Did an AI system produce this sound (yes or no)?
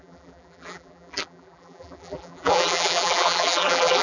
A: yes